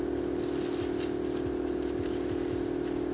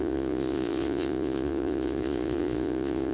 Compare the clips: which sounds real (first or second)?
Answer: first